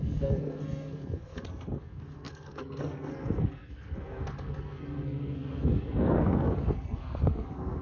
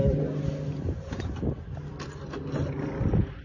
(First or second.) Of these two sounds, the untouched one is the second